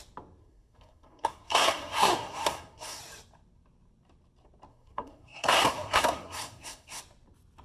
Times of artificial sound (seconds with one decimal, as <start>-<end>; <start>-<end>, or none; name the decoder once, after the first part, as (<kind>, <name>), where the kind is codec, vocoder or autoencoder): 0.4-3.0 (codec, SNAC); 4.7-7.0